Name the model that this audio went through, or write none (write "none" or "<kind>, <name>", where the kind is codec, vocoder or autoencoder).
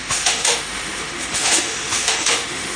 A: autoencoder, DAC-VAE